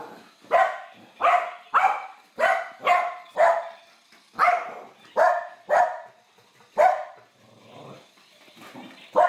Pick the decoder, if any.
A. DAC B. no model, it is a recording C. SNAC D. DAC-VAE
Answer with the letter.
B